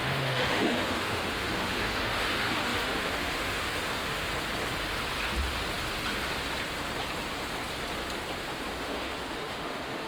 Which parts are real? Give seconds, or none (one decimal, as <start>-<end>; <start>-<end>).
4.3-8.8